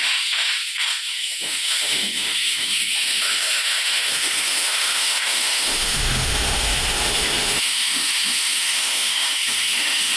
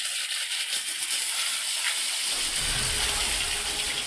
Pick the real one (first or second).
second